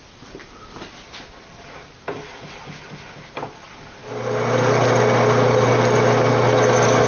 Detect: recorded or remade recorded